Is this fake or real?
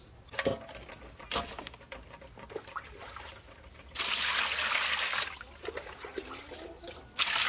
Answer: real